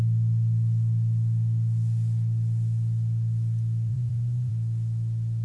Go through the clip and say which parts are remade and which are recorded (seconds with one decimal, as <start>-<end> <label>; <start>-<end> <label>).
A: 0.0-3.9 recorded; 3.9-4.5 remade; 4.5-5.4 recorded